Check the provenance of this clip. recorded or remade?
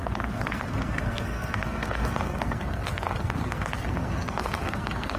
remade